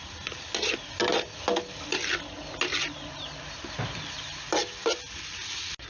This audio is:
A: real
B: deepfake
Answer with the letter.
A